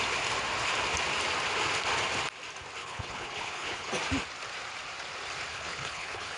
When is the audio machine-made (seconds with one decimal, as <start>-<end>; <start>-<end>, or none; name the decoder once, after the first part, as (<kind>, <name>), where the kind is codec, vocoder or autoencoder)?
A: 2.8-3.9 (codec, HILCodec); 5.5-6.4